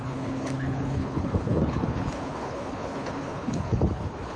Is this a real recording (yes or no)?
no